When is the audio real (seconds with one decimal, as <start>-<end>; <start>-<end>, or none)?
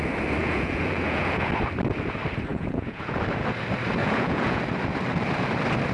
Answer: 0.0-0.4; 1.5-2.5; 3.2-4.0; 4.6-5.9